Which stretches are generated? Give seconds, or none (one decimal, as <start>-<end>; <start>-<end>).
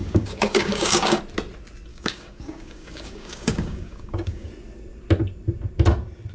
0.0-1.2; 1.9-4.5